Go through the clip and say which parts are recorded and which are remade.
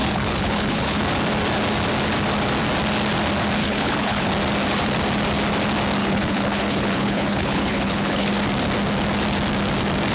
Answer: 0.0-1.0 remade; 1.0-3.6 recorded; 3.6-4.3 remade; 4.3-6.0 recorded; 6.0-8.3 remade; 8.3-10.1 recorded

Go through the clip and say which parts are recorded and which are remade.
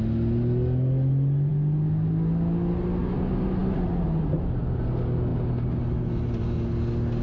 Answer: 0.0-7.2 recorded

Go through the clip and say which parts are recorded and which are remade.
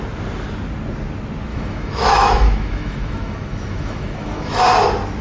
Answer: 0.0-1.5 recorded; 1.5-4.6 remade; 4.6-5.2 recorded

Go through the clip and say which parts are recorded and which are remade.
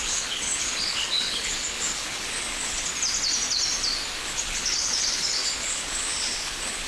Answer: 0.0-2.9 remade; 2.9-4.2 recorded; 4.2-6.9 remade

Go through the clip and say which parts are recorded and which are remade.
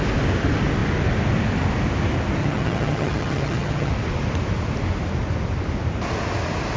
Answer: 0.0-2.4 recorded; 2.4-3.9 remade; 3.9-6.8 recorded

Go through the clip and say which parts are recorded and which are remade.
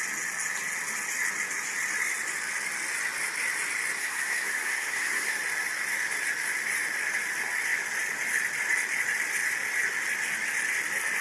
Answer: 0.0-4.0 recorded; 4.0-5.4 remade; 5.4-11.2 recorded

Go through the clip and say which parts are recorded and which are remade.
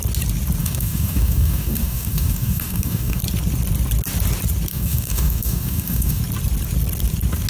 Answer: 0.0-0.6 recorded; 0.6-3.2 remade; 3.2-4.7 recorded; 4.7-6.2 remade; 6.2-7.5 recorded